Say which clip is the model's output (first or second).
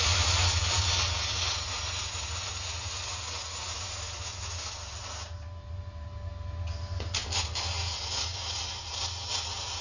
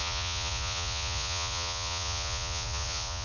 second